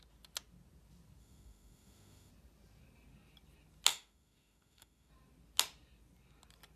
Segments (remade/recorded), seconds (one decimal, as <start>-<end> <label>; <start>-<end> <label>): 0.0-1.2 recorded; 1.2-2.3 remade; 2.3-3.9 recorded; 3.9-5.1 remade; 5.1-6.8 recorded